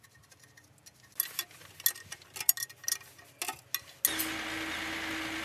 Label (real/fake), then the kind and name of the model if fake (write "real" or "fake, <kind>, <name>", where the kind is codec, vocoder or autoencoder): real